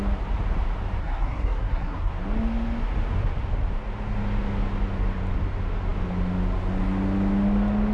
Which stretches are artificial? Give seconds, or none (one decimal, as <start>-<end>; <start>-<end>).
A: 1.0-2.1

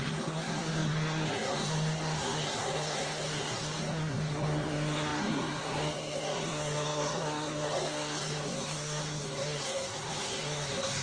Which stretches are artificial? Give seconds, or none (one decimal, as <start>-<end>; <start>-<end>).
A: 0.0-11.0

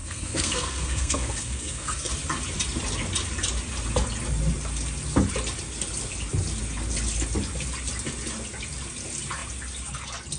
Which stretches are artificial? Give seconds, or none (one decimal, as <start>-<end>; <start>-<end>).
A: 0.0-2.1

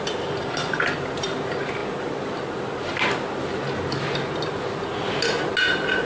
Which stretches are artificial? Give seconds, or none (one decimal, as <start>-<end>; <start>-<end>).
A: none

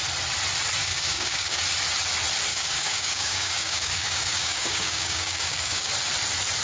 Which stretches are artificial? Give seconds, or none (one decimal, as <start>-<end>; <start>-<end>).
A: 0.8-1.6; 2.5-5.9

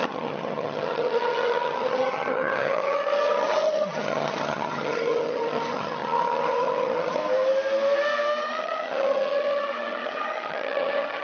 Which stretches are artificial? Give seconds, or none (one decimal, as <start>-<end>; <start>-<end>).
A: 0.0-7.2; 8.4-11.2